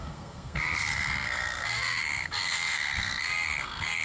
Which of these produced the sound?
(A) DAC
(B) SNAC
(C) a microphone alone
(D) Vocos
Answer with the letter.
B